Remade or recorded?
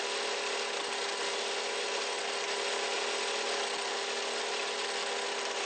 recorded